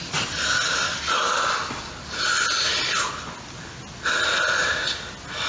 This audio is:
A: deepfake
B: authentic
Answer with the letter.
B